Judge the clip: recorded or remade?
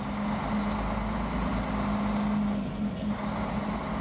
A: recorded